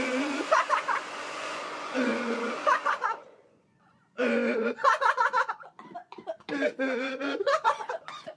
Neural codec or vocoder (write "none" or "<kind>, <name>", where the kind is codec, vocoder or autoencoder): vocoder, Vocos